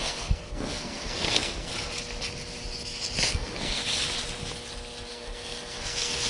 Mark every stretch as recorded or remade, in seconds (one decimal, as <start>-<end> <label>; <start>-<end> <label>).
0.0-1.7 remade; 1.7-3.3 recorded; 3.3-3.8 remade; 3.8-5.1 recorded; 5.1-6.3 remade